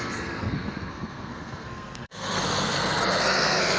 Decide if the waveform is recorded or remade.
remade